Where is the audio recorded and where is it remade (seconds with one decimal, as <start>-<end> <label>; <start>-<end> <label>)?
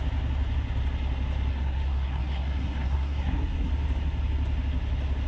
0.0-1.5 recorded; 1.5-3.7 remade; 3.7-5.3 recorded